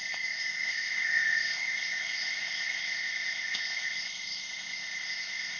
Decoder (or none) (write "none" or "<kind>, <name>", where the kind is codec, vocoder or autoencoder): codec, ZipCodec